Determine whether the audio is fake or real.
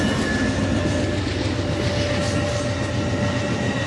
real